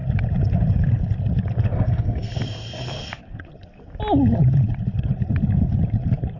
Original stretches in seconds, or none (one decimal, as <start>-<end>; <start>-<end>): 0.0-1.7; 2.3-6.4